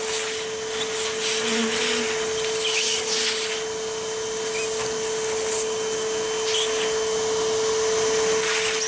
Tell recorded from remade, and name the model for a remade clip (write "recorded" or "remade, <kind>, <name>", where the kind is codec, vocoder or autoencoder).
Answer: recorded